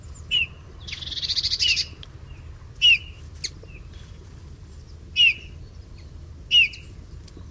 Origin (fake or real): real